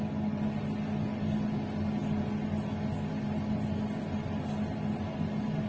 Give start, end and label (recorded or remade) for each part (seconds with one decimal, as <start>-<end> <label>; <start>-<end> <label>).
0.0-5.7 recorded